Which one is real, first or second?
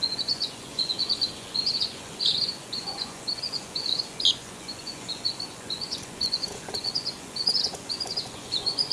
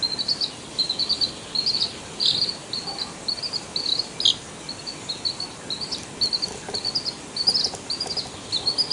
second